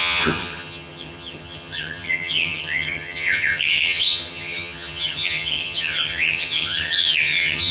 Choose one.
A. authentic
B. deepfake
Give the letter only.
B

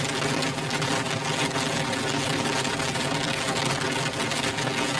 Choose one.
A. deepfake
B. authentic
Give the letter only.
B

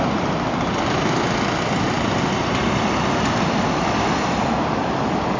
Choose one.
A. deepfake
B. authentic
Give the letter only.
B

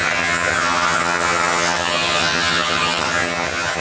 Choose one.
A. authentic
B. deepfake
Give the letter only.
B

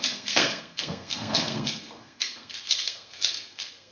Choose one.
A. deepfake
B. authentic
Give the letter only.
A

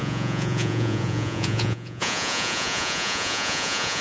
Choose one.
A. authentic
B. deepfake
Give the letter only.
B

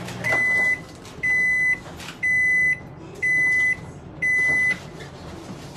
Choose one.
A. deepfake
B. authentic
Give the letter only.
B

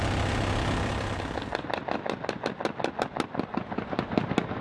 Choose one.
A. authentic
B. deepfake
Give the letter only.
A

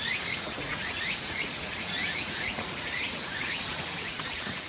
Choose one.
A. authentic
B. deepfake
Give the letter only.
B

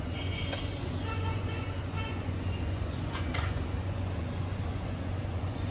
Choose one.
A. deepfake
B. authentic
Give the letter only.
A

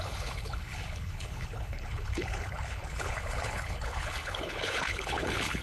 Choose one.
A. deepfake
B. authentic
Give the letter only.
A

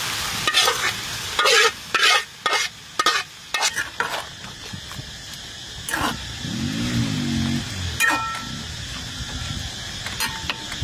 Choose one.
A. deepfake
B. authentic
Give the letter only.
B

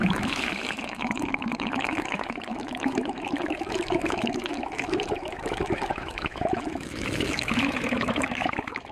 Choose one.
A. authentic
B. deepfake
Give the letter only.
B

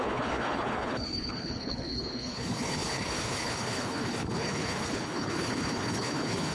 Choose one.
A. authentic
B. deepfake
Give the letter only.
B